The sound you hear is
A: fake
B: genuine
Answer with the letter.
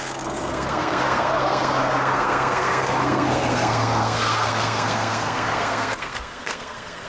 A